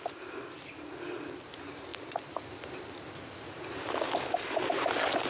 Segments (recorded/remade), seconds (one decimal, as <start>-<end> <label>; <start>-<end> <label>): 0.0-5.3 recorded